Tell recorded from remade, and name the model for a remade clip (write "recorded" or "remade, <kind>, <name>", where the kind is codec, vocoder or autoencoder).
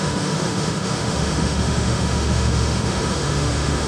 remade, autoencoder, DAC-VAE